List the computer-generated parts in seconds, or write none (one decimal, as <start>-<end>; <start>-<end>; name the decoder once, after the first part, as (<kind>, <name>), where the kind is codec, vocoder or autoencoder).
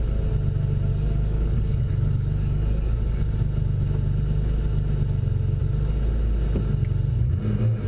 0.9-3.0 (codec, DAC)